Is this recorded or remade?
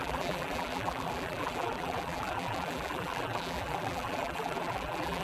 remade